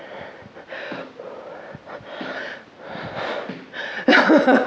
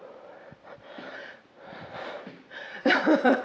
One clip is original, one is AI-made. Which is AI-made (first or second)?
second